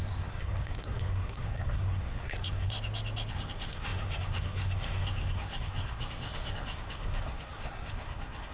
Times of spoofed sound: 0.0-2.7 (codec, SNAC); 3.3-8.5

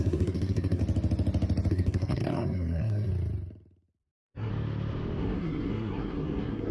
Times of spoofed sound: 0.0-0.8 (codec, SNAC); 1.7-3.1; 4.0-4.5; 5.2-6.7

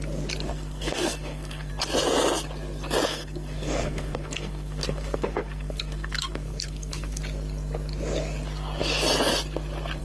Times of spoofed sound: 0.5-1.7 (codec, SNAC); 3.1-7.2